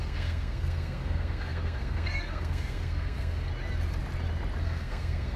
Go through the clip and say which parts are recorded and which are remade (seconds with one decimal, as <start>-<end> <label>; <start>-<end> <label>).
0.0-3.5 remade; 3.5-4.6 recorded; 4.6-5.4 remade